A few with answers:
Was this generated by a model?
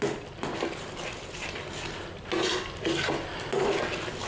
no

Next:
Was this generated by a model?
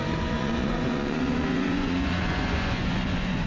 yes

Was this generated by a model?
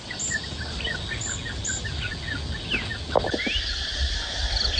no